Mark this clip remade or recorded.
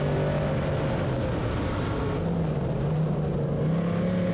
recorded